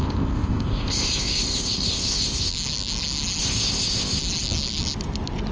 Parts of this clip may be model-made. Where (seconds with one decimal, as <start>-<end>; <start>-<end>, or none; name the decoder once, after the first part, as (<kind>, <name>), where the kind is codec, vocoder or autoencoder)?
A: 0.0-2.5 (codec, ZipCodec); 3.4-4.2